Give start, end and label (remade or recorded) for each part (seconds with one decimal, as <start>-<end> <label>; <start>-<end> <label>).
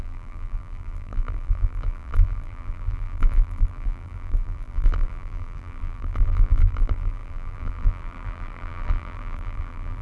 0.0-10.0 remade